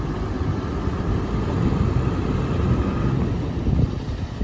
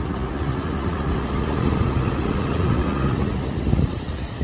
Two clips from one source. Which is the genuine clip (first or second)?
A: first